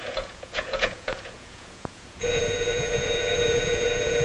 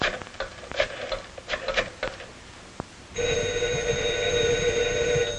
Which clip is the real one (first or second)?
second